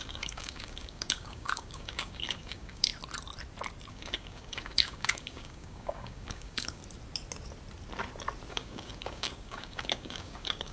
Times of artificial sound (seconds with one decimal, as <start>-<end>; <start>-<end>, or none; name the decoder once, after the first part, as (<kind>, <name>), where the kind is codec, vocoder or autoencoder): 0.0-2.9 (codec, DAC); 3.9-6.8; 8.5-10.7